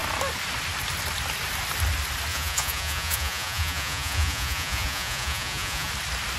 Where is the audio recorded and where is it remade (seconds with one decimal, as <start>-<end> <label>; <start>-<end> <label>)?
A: 0.0-2.3 recorded; 2.3-5.9 remade; 5.9-6.4 recorded